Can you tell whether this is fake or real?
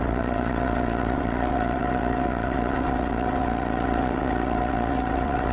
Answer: fake